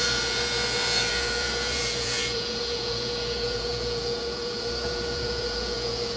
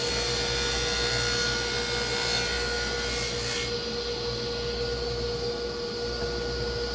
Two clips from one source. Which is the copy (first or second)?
first